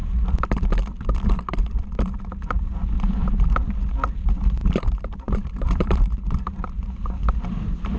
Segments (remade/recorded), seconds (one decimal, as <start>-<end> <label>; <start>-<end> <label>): 0.0-4.6 recorded; 4.6-7.1 remade; 7.1-8.0 recorded